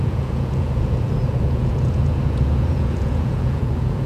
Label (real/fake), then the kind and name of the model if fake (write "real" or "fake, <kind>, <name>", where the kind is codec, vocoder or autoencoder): fake, vocoder, Vocos